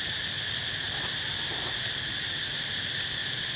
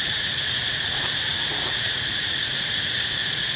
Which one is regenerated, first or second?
second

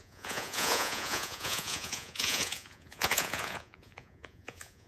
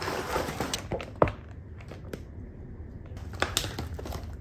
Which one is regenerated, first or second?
first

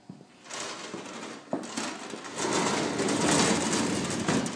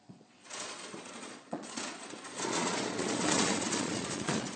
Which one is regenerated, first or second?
second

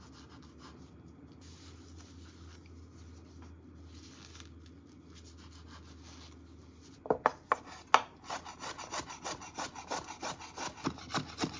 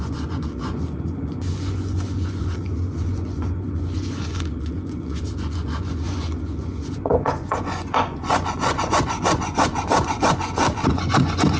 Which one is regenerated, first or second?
second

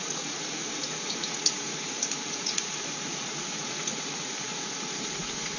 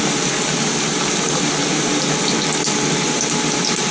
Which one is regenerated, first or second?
first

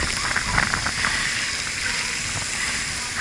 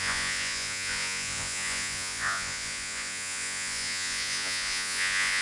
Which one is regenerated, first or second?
second